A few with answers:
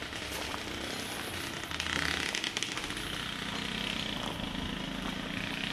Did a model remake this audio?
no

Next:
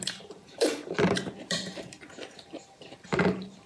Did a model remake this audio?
yes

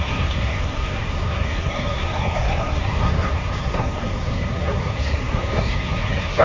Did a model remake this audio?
yes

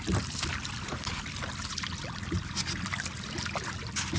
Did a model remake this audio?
no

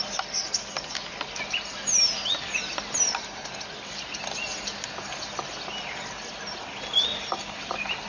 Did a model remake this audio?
no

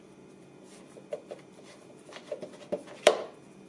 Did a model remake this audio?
no